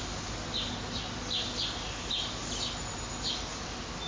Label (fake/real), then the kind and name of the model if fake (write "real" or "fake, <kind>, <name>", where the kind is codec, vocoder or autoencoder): real